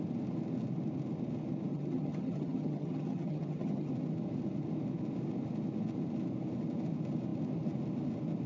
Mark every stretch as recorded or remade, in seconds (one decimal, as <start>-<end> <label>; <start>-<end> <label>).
0.0-1.7 recorded; 1.7-3.9 remade; 3.9-8.5 recorded